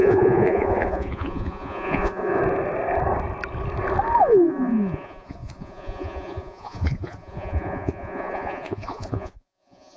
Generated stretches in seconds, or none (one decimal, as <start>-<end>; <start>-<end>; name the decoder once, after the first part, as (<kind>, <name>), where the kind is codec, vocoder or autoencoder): 0.0-2.4 (vocoder, Vocos); 4.2-10.0